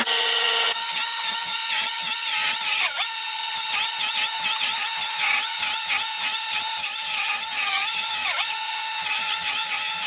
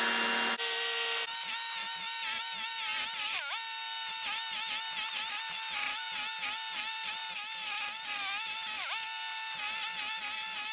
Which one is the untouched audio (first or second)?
second